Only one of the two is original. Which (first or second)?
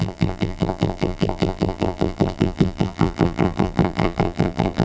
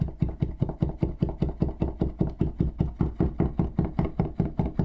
second